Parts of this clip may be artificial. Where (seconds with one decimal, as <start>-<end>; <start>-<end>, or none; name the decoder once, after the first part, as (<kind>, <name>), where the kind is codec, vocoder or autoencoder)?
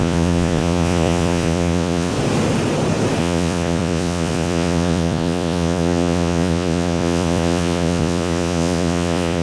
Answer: 0.0-2.1 (vocoder, Vocos); 3.2-9.4